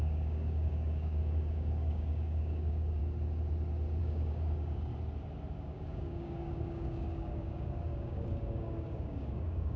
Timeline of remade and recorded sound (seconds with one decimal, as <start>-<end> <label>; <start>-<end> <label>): 0.0-3.0 remade; 3.0-4.0 recorded; 4.0-4.9 remade; 4.9-5.6 recorded; 5.6-9.8 remade